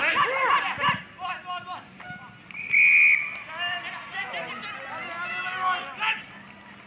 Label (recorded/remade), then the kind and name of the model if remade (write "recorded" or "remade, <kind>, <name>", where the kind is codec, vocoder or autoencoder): recorded